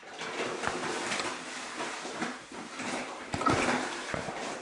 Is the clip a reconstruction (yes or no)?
yes